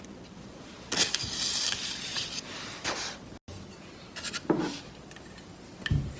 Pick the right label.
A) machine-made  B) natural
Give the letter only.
B